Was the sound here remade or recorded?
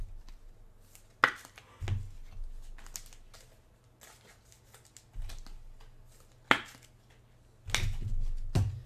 recorded